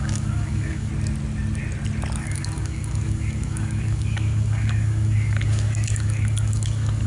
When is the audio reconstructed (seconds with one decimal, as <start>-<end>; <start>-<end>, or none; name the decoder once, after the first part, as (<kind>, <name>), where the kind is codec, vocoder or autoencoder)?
0.0-0.9 (codec, DAC); 2.2-7.1